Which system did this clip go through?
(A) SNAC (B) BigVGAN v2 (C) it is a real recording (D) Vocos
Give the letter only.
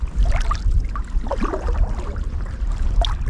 C